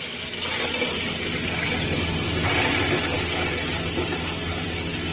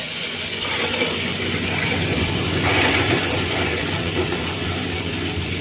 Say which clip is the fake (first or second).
second